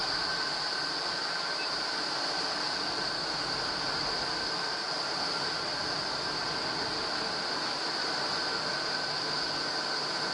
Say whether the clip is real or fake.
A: real